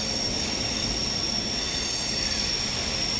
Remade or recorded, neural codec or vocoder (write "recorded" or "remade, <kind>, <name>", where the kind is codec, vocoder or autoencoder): recorded